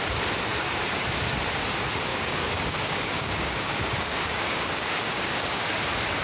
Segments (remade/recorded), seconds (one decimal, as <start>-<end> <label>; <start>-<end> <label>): 0.0-2.1 recorded; 2.1-5.7 remade; 5.7-6.2 recorded